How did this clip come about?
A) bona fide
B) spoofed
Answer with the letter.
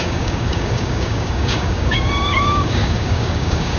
B